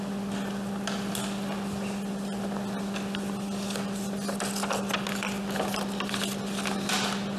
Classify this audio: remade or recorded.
recorded